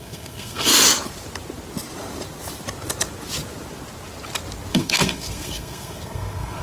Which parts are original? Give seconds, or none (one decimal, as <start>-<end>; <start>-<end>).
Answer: 0.7-4.7